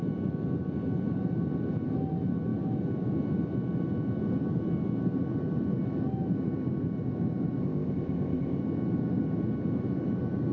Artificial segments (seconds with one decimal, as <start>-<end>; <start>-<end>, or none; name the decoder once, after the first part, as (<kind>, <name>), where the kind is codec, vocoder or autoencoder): 7.6-8.6 (codec, ZipCodec)